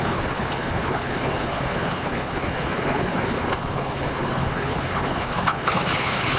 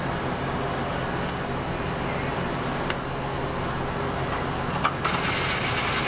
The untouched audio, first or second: second